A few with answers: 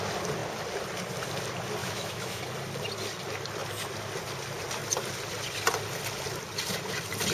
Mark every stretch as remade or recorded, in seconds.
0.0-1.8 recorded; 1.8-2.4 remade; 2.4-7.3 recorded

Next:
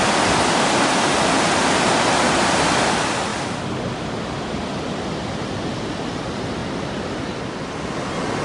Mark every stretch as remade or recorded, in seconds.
0.0-8.4 recorded

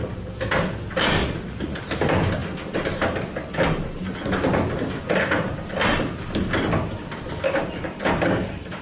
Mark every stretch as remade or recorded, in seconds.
0.0-1.2 recorded; 1.2-1.8 remade; 1.8-8.8 recorded